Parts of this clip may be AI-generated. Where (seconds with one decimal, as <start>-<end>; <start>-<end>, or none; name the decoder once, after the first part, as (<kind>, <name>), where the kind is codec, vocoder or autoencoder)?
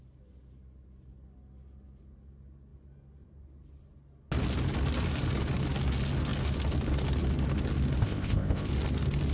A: 8.0-8.7 (codec, ZipCodec)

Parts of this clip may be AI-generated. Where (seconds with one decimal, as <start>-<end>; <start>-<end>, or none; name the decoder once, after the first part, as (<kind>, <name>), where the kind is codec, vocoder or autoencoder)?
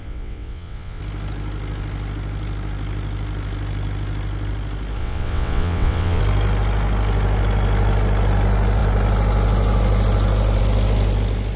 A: 0.0-1.0 (vocoder, WaveNeXt); 5.0-6.2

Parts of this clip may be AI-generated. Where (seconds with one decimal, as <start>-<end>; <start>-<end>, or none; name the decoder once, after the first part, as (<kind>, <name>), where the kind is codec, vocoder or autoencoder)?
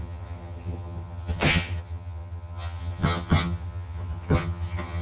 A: 0.0-5.0 (vocoder, HiFi-GAN)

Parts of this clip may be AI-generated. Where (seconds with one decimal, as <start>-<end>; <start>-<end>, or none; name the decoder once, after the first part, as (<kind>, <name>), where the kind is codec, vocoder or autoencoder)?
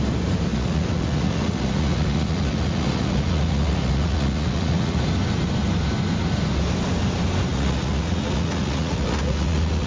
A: 0.5-5.0 (vocoder, Vocos); 7.5-9.9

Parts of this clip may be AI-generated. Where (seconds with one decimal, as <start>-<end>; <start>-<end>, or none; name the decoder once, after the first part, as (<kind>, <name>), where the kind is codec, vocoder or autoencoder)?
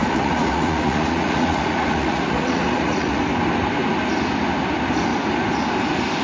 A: 0.0-3.2 (vocoder, Vocos)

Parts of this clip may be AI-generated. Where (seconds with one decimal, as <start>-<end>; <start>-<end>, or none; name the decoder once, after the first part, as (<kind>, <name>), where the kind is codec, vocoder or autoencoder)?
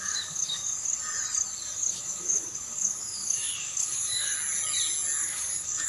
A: 0.0-0.9 (codec, DAC); 1.9-4.3; 5.2-5.9